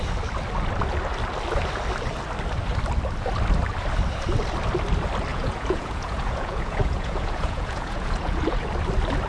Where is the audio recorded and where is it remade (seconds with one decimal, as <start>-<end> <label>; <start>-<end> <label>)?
0.0-5.3 recorded; 5.3-8.6 remade; 8.6-9.3 recorded